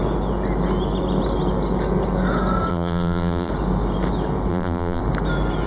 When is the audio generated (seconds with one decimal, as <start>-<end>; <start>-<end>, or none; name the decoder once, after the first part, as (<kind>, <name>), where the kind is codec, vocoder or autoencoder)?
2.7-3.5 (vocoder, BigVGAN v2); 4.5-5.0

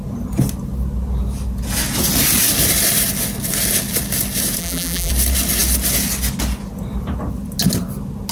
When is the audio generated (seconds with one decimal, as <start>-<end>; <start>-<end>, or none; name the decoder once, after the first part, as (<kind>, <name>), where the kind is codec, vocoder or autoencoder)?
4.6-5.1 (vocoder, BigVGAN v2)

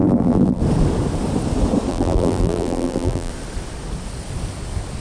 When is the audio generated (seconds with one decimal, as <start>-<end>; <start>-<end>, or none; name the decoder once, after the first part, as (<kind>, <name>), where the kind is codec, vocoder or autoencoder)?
0.0-0.6 (vocoder, BigVGAN v2); 1.9-3.3

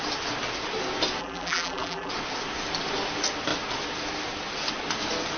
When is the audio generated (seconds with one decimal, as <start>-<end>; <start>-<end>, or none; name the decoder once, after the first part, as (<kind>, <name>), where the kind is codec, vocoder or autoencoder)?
1.2-2.1 (vocoder, BigVGAN v2)